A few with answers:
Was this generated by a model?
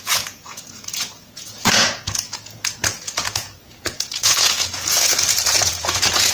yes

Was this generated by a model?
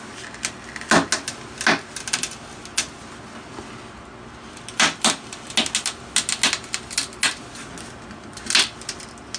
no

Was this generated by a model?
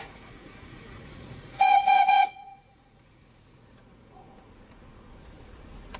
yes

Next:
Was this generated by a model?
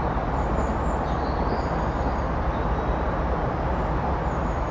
no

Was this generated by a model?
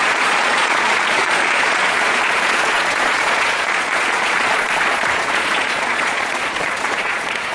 yes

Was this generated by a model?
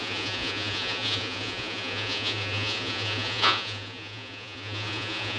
yes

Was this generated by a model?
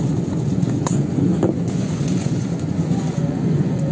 yes